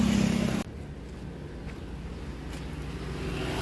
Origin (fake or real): real